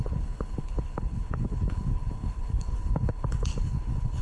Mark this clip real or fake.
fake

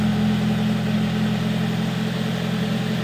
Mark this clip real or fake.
real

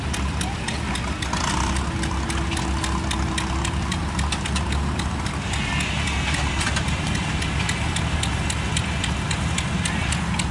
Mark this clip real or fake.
real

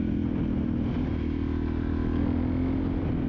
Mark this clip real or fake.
real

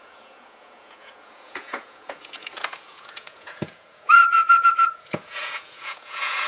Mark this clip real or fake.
fake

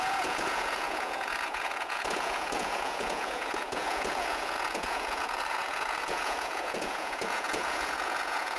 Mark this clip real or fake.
fake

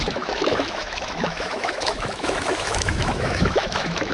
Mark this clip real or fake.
fake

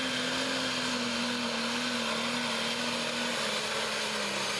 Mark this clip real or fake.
real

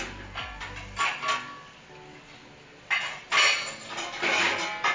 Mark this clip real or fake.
real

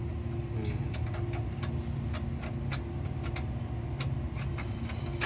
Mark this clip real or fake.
real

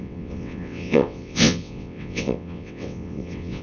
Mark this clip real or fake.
fake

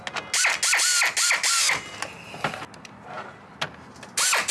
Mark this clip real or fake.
real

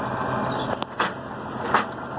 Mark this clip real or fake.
real